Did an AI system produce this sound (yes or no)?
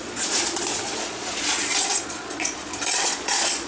yes